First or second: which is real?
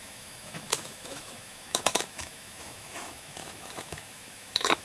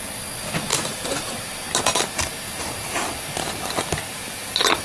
second